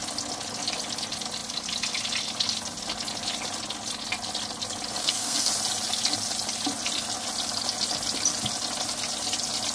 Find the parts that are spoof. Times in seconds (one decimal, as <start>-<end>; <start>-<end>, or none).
5.0-5.5